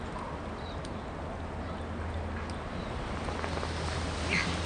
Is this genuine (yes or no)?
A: yes